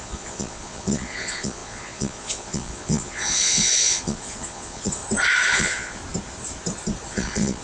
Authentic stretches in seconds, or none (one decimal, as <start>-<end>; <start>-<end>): 5.0-5.5; 6.0-7.1